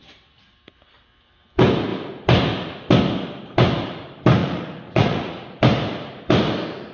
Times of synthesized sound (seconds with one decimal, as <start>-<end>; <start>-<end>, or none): 4.4-5.6

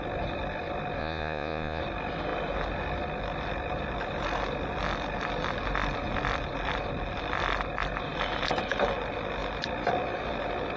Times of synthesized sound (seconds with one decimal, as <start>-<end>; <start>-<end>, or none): 1.0-1.8

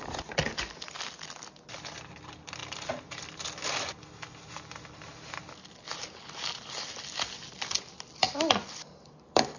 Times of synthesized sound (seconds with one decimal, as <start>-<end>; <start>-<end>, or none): none

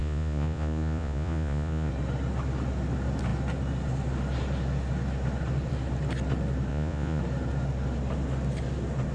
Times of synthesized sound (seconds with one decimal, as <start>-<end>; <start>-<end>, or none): 0.0-1.9; 6.7-7.2

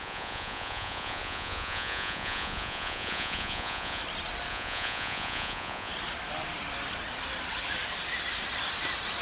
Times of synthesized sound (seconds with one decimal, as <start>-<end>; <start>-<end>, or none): 0.0-4.0; 4.5-5.9

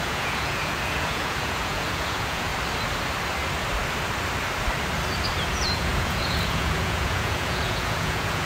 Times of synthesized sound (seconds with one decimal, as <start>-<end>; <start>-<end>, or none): 0.0-2.5; 5.5-8.5

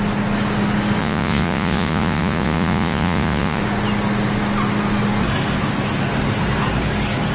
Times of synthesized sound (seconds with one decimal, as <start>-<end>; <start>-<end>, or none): 1.0-3.6